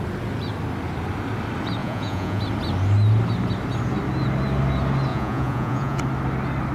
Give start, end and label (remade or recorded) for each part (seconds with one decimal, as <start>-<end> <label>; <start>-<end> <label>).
0.0-1.8 recorded; 1.8-2.4 remade; 2.4-5.1 recorded; 5.1-6.0 remade; 6.0-6.7 recorded